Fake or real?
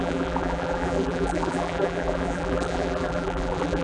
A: fake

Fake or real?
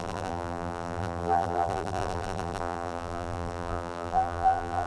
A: fake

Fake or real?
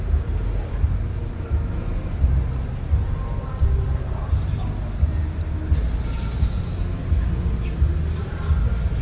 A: real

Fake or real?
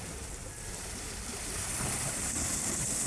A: real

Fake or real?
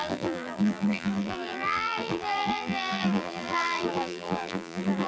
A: fake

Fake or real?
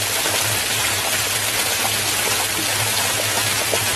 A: real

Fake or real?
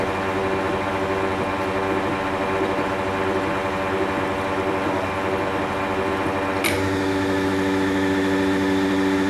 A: real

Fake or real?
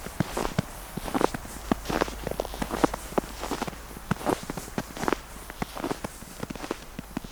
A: real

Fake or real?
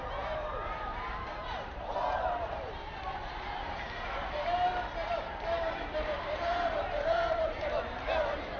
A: fake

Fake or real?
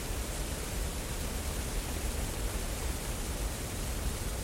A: fake